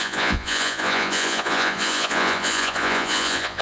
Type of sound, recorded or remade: remade